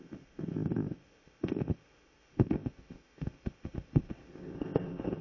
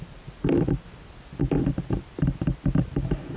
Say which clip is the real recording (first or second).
second